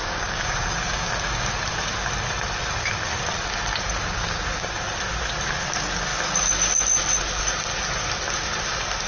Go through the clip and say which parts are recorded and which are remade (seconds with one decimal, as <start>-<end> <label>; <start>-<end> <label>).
0.0-1.4 remade; 1.4-4.2 recorded; 4.2-4.8 remade; 4.8-9.1 recorded